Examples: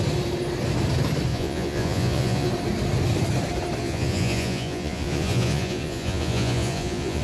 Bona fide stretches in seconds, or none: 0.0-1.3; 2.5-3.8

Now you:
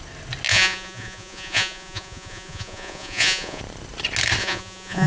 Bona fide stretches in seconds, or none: 0.0-0.5; 3.6-4.4

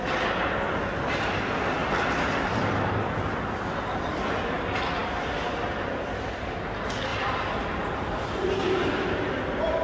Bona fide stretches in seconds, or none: 0.0-9.8

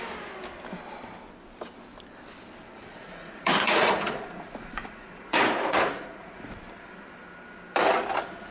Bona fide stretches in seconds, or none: 0.0-2.8; 6.6-8.5

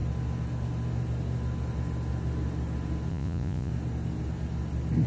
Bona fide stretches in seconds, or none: 0.0-3.1; 3.7-5.1

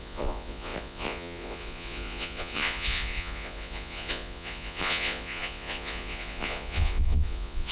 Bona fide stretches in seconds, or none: none